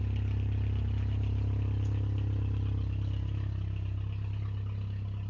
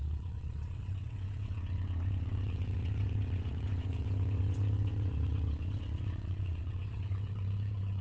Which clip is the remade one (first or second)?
second